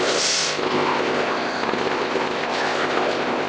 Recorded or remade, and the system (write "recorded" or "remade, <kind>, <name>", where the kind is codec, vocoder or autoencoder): remade, codec, ZipCodec